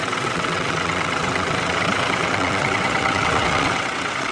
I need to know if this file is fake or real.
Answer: fake